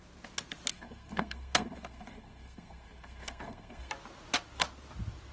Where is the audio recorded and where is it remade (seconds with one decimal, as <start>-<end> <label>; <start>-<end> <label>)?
0.0-0.7 recorded; 0.7-3.9 remade; 3.9-5.3 recorded